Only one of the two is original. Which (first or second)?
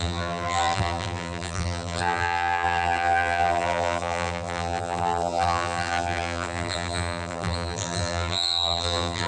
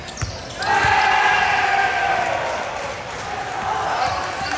second